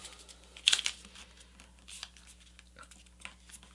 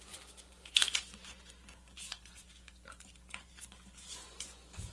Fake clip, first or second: second